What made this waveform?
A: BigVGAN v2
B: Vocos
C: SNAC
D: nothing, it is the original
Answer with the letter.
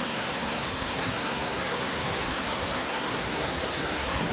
C